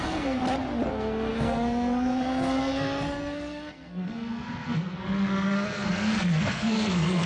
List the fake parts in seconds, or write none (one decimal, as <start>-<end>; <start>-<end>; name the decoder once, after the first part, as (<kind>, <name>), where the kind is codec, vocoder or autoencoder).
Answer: 0.0-0.4 (codec, SNAC); 0.9-7.3